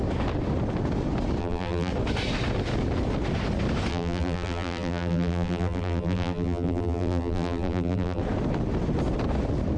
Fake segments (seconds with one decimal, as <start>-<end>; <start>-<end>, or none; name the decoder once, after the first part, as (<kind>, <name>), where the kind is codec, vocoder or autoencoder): 1.4-1.9 (vocoder, BigVGAN v2); 3.9-8.2